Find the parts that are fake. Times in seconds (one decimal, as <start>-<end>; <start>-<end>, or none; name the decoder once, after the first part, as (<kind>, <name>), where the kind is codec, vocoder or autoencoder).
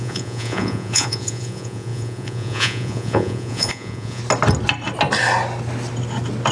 0.0-4.2 (vocoder, Vocos)